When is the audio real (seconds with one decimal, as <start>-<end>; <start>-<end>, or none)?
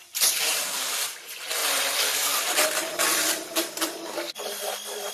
0.0-1.6